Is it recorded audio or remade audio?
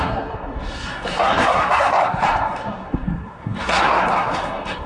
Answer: remade